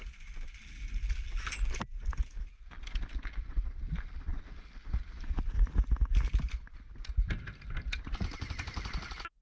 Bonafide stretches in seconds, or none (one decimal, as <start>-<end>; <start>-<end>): 0.0-9.4